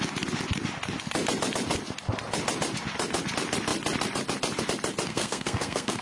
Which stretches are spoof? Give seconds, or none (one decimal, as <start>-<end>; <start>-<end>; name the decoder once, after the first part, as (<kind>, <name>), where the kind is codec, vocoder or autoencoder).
5.1-6.0 (codec, SNAC)